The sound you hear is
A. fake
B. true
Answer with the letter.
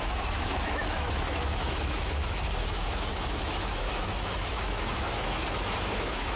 A